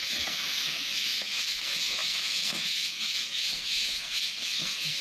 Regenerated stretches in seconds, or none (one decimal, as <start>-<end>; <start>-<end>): 0.0-5.0